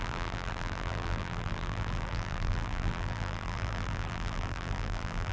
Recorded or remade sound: remade